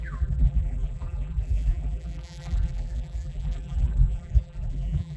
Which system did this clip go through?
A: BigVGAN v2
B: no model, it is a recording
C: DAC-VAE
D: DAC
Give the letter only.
A